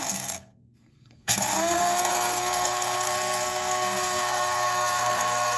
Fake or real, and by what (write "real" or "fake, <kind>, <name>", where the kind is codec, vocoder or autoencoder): fake, codec, SNAC